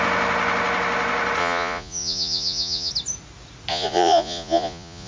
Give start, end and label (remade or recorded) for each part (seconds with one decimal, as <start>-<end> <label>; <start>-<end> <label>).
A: 0.0-1.4 recorded; 1.4-2.9 remade; 2.9-3.7 recorded; 3.7-5.1 remade